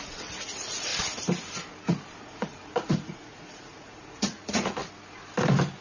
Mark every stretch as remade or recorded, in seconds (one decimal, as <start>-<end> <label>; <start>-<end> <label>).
0.0-0.9 remade; 0.9-2.2 recorded; 2.2-4.8 remade; 4.8-5.8 recorded